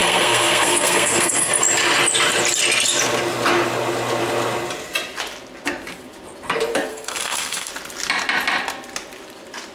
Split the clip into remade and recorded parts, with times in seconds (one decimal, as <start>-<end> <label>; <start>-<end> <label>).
0.0-1.5 remade; 1.5-6.9 recorded; 6.9-7.7 remade; 7.7-9.7 recorded